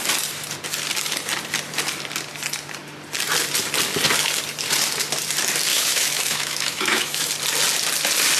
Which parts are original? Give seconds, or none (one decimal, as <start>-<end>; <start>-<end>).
0.0-5.7; 7.3-8.4